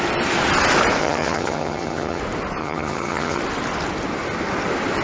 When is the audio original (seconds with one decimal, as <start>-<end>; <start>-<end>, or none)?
0.0-1.0; 2.2-2.6; 3.4-5.0